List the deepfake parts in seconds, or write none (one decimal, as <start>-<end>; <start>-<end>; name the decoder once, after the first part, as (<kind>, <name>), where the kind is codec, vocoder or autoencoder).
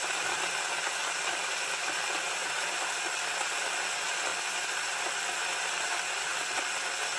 2.4-3.2 (vocoder, BigVGAN v2)